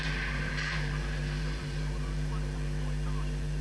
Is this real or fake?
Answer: fake